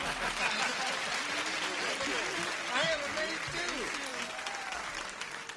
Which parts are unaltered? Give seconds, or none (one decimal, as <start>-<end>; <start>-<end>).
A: 0.0-5.6